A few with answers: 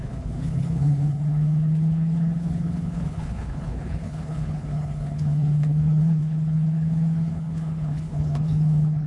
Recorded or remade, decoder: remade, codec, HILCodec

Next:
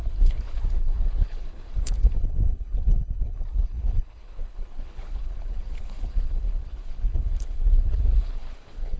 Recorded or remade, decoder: remade, codec, HILCodec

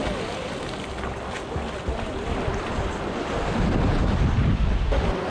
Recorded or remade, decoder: recorded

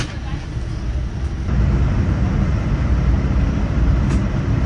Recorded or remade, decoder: recorded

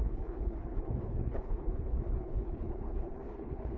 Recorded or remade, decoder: remade, codec, HILCodec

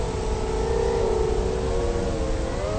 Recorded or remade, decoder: recorded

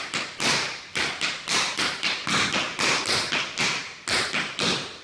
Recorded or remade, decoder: recorded